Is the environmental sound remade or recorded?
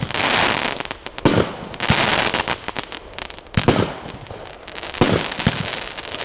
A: recorded